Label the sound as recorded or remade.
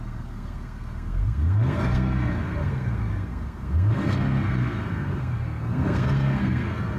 remade